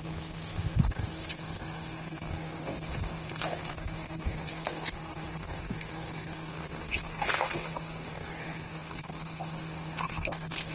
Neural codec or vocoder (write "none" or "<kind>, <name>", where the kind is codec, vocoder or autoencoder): codec, SNAC